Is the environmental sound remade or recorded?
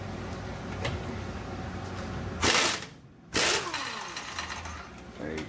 recorded